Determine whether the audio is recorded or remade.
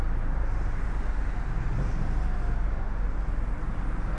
recorded